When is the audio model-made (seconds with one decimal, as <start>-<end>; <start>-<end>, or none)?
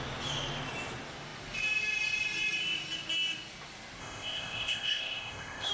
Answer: 4.0-5.7